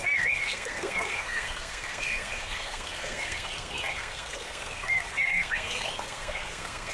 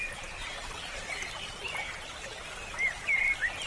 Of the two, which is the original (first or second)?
second